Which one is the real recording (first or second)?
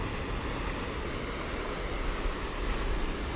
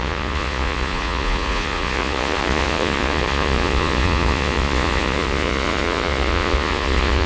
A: first